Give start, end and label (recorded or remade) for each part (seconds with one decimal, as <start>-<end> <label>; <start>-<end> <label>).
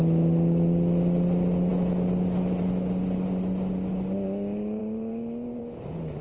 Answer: 0.0-4.8 recorded; 4.8-5.6 remade; 5.6-6.2 recorded